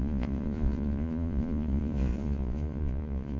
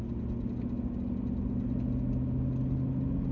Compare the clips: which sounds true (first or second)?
second